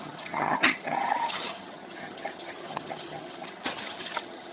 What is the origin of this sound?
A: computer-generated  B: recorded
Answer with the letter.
A